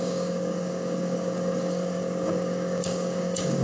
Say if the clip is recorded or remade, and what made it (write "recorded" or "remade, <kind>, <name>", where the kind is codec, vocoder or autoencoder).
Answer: remade, codec, DAC